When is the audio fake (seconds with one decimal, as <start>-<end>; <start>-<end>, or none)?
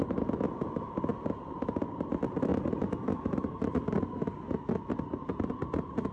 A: 2.5-4.1